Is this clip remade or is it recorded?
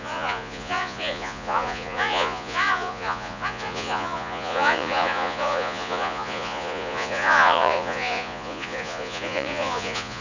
remade